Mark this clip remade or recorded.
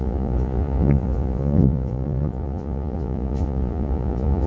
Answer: remade